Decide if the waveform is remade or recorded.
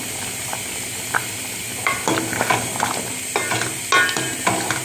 recorded